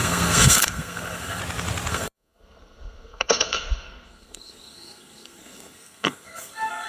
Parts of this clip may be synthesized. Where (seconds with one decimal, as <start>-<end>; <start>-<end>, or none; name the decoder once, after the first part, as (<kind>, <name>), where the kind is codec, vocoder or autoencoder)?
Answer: 0.0-1.4 (codec, SNAC); 1.9-6.9